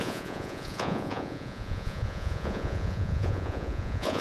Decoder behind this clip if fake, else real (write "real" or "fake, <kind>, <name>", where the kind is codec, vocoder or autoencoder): fake, vocoder, Vocos